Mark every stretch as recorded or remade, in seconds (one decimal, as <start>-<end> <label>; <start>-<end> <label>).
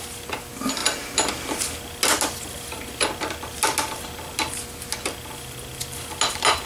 0.0-6.7 recorded